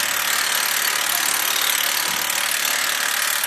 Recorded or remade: recorded